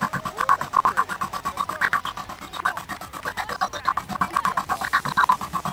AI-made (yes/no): no